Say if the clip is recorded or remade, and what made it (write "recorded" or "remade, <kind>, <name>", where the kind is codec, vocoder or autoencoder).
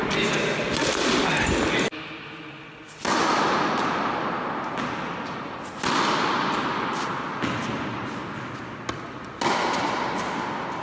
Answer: recorded